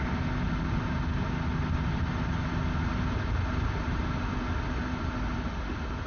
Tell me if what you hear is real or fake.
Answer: real